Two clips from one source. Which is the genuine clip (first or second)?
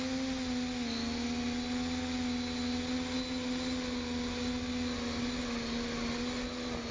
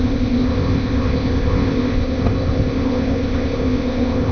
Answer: first